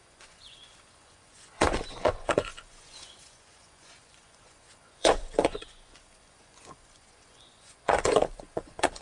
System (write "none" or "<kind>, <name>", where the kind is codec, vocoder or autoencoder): vocoder, Vocos